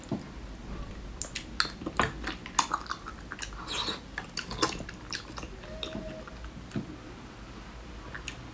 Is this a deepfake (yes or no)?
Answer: no